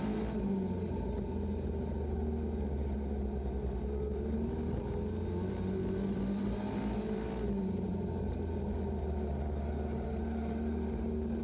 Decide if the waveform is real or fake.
real